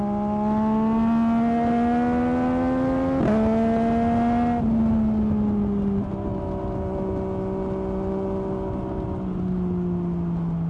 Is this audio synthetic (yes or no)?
no